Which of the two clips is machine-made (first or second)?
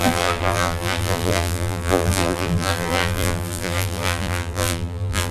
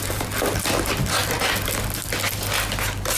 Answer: first